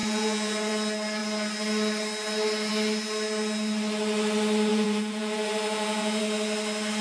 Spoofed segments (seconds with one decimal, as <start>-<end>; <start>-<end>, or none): 0.0-0.7; 4.7-6.2